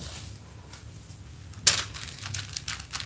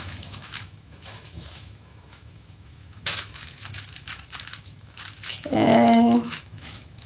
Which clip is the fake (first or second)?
second